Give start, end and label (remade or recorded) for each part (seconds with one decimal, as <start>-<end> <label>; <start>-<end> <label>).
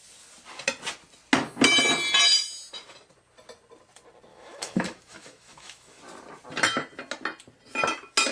0.0-4.3 recorded; 4.3-6.0 remade; 6.0-8.3 recorded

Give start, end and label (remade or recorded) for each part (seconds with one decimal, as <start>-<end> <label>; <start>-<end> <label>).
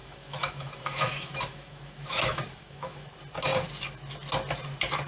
0.0-3.1 remade; 3.1-5.1 recorded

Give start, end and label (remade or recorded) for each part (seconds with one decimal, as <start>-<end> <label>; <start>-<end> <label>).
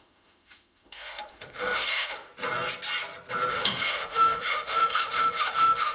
0.0-2.3 remade; 2.3-3.5 recorded; 3.5-5.9 remade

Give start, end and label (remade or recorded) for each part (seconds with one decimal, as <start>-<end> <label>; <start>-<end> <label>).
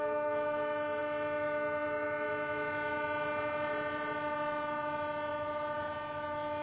0.0-6.6 recorded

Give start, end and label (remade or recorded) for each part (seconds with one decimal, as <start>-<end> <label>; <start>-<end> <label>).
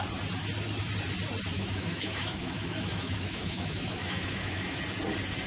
0.0-1.5 recorded; 1.5-4.8 remade; 4.8-5.5 recorded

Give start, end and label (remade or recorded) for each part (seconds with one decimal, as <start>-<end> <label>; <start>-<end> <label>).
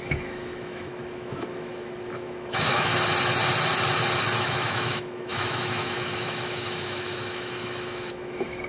0.0-2.9 remade; 2.9-4.4 recorded; 4.4-8.7 remade